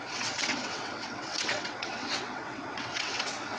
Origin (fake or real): fake